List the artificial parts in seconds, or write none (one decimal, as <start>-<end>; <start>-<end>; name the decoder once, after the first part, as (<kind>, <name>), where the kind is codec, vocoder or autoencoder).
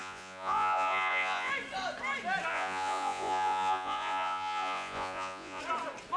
0.0-1.5 (vocoder, Vocos); 2.5-5.6